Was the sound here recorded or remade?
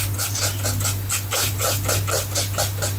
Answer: recorded